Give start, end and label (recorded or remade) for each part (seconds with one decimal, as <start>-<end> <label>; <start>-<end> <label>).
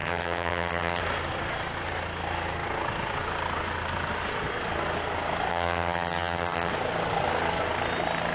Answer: 0.0-1.0 remade; 1.0-5.5 recorded; 5.5-6.7 remade; 6.7-8.3 recorded